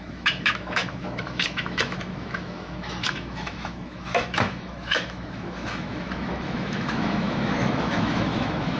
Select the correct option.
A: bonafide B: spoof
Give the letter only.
B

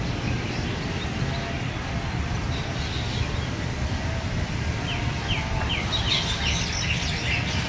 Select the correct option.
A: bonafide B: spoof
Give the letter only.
A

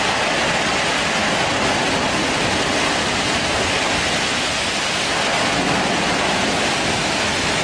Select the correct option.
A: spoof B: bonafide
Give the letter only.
B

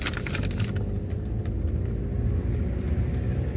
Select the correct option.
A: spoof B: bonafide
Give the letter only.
B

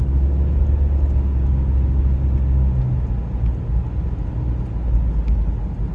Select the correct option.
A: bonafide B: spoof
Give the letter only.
A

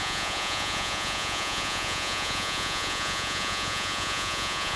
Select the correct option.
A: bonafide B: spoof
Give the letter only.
B